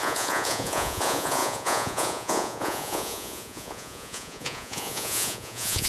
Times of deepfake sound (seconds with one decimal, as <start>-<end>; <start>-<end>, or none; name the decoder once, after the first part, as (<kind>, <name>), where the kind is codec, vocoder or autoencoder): 0.0-5.9 (vocoder, Vocos)